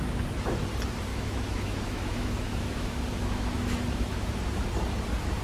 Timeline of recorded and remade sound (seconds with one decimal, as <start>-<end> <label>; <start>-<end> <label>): 0.0-1.1 recorded; 1.1-4.3 remade; 4.3-5.4 recorded